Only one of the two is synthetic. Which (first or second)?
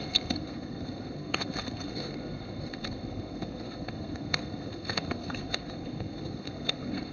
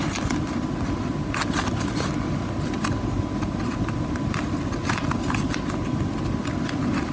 first